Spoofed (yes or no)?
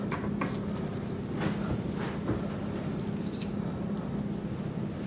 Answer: no